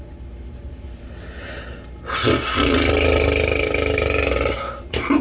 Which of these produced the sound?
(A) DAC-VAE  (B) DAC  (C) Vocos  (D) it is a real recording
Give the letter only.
D